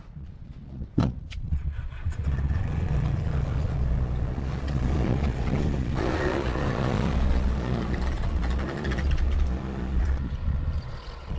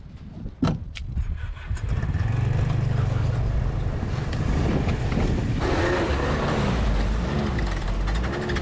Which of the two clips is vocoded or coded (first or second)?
first